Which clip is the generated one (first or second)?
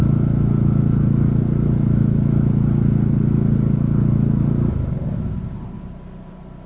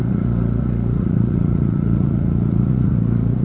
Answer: second